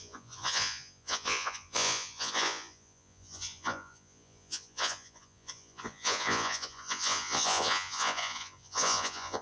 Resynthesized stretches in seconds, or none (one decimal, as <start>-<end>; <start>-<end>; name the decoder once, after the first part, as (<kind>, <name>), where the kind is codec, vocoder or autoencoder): 0.0-9.4 (vocoder, Vocos)